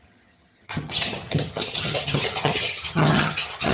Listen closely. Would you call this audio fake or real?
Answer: fake